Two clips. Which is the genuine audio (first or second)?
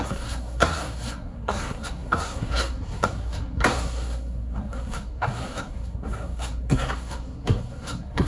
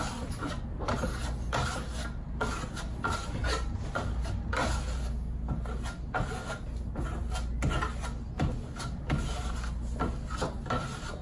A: second